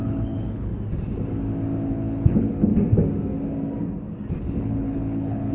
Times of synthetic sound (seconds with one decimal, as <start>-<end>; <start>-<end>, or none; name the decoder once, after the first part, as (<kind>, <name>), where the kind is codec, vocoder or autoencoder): 0.0-0.7 (codec, HILCodec); 1.9-2.7; 4.6-5.5